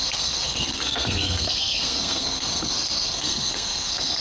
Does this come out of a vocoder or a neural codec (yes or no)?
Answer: yes